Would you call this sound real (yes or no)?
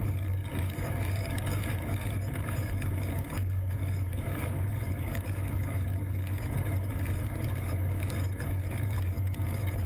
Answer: no